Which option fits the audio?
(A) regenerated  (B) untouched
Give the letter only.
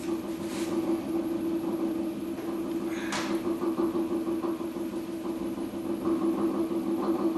B